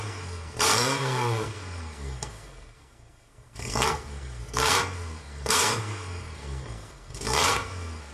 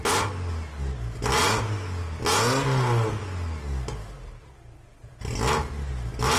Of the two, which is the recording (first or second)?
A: second